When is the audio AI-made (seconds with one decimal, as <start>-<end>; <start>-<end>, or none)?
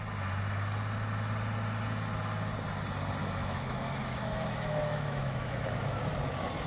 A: 3.2-6.0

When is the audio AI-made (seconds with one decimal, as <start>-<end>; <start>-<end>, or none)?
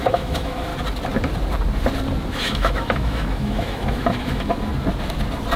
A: 0.0-0.7; 2.3-4.7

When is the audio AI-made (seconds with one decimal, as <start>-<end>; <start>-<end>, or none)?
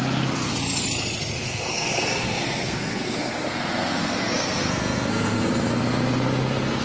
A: 1.4-5.5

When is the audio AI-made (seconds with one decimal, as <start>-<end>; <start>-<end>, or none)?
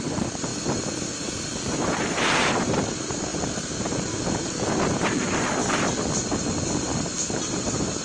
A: 0.0-0.5; 1.6-5.6; 7.4-8.0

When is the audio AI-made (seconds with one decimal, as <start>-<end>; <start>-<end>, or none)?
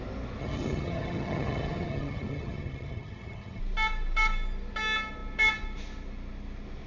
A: 0.4-3.6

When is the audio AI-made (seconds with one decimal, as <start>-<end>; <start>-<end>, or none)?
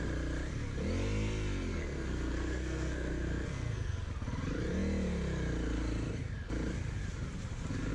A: 1.7-4.1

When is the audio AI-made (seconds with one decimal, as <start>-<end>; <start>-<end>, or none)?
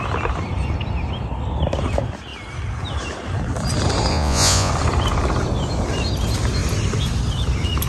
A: 4.1-4.7